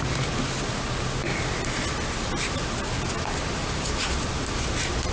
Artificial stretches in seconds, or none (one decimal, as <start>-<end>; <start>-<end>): none